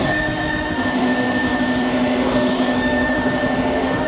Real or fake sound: fake